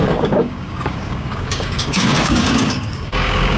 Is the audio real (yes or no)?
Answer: no